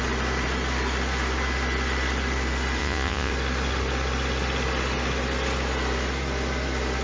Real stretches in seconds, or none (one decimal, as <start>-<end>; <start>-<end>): 0.0-2.8; 3.3-7.0